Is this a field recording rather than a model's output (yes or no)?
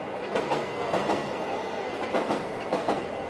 no